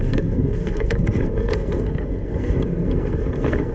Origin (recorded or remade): remade